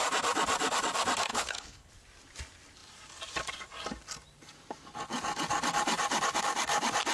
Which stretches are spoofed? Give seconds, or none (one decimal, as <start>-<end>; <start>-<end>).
1.3-1.9